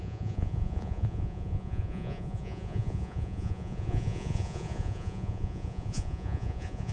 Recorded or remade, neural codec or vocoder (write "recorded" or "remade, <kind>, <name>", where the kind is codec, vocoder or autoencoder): remade, vocoder, Vocos